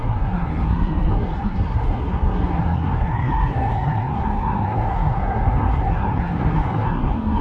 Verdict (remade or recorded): remade